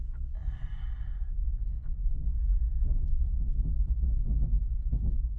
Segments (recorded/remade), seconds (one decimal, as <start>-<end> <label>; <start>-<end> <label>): 0.0-2.0 recorded; 2.0-5.4 remade